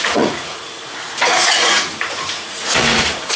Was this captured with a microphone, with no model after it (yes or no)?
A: no